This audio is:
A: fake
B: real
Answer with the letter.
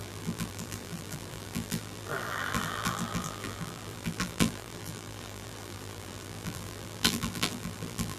A